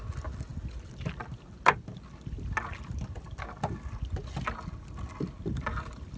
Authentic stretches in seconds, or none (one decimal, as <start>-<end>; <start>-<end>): 0.0-6.2